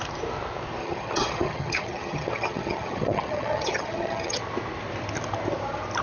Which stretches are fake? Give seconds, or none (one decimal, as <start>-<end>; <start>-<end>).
0.8-4.4